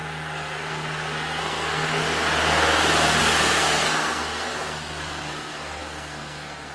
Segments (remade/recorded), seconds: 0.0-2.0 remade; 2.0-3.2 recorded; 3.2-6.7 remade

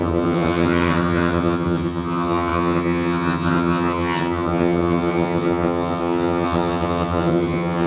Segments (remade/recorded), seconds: 0.0-7.9 remade

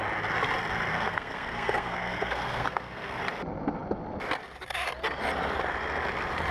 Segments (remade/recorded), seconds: 0.0-0.9 recorded; 0.9-3.2 remade; 3.2-6.5 recorded